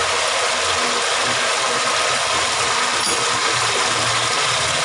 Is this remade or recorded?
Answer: recorded